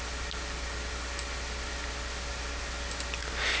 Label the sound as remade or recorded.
recorded